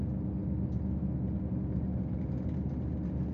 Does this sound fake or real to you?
real